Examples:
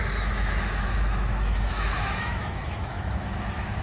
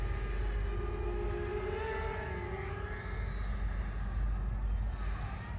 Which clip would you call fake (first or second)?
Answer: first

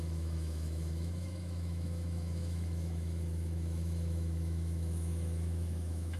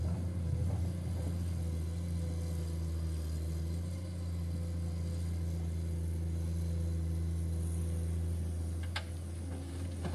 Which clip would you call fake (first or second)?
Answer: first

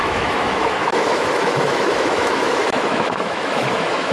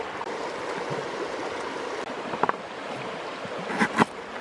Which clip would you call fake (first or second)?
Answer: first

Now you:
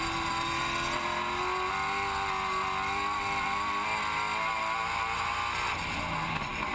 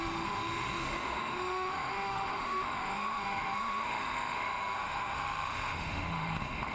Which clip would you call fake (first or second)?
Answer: second